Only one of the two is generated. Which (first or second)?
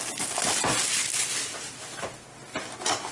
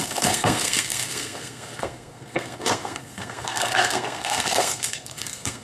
second